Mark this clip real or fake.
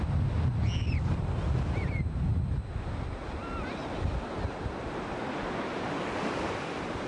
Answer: real